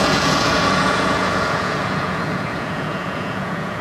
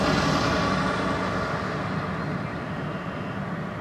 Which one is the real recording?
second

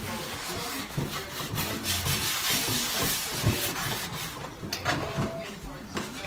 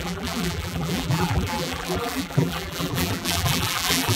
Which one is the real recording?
first